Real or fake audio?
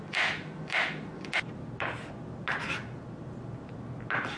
real